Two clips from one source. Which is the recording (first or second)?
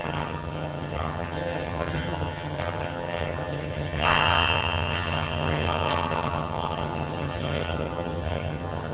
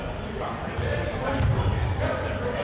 second